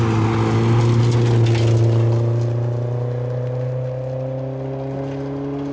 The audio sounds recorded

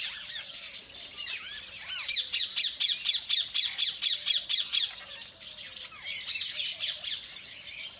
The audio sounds recorded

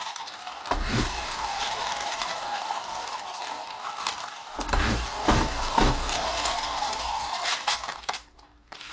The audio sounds remade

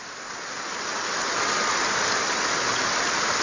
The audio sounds recorded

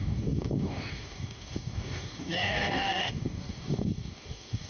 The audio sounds remade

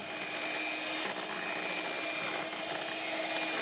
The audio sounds recorded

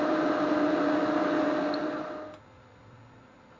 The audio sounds recorded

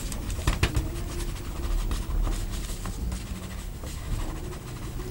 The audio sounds recorded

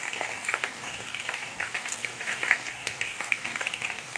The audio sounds remade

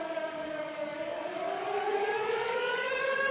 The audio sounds remade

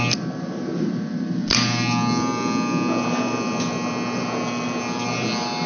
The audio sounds recorded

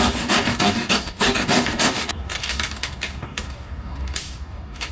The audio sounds remade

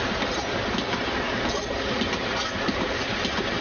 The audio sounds recorded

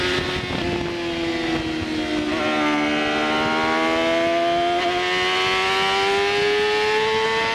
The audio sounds recorded